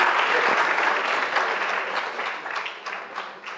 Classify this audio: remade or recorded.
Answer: recorded